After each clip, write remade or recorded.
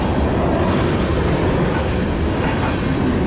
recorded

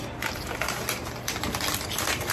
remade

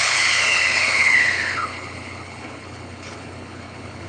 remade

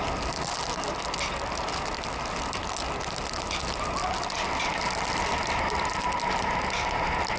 recorded